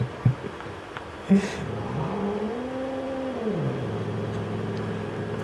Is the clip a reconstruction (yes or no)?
no